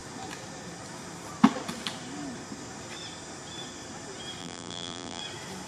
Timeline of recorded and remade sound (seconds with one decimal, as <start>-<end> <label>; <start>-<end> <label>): 0.0-4.4 recorded; 4.4-5.2 remade; 5.2-5.7 recorded